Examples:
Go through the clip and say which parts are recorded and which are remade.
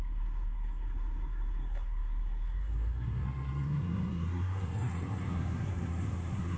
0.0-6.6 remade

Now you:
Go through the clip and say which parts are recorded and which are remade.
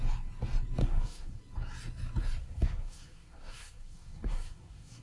0.0-0.8 recorded; 0.8-1.4 remade; 1.4-2.4 recorded; 2.4-5.0 remade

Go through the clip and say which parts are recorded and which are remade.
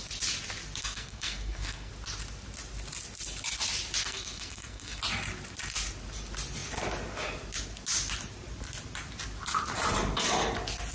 0.0-0.8 recorded; 0.8-1.9 remade; 1.9-4.0 recorded; 4.0-5.0 remade; 5.0-10.9 recorded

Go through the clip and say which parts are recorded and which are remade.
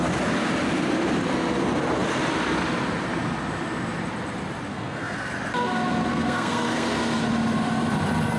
0.0-4.7 recorded; 4.7-5.3 remade; 5.3-6.1 recorded; 6.1-7.2 remade; 7.2-8.4 recorded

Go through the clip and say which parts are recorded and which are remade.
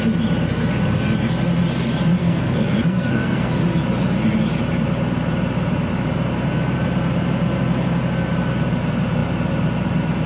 0.0-2.2 recorded; 2.2-3.6 remade; 3.6-10.3 recorded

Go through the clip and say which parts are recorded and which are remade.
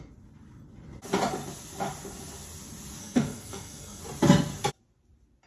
0.0-3.0 recorded; 3.0-4.0 remade; 4.0-5.5 recorded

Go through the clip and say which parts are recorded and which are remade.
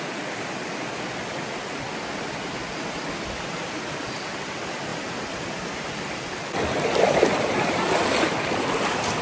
0.0-9.2 recorded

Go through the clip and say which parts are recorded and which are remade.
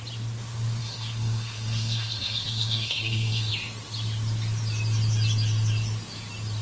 0.0-0.8 recorded; 0.8-3.5 remade; 3.5-6.6 recorded